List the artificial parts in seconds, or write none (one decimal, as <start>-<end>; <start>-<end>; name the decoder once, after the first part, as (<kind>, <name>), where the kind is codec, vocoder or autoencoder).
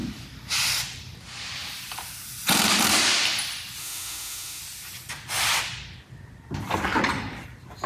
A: 3.8-4.6 (autoencoder, DAC-VAE)